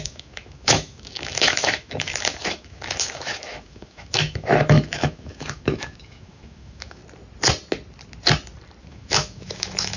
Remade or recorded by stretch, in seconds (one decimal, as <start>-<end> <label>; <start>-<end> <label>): 0.0-7.0 remade; 7.0-8.8 recorded; 8.8-10.0 remade